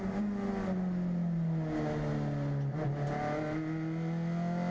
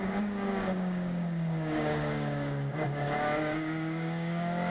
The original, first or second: first